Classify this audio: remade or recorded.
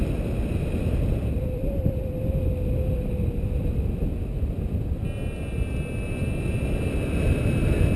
recorded